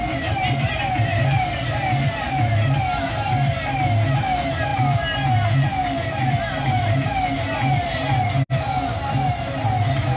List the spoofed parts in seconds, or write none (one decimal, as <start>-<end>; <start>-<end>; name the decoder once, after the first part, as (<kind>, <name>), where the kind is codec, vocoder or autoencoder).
none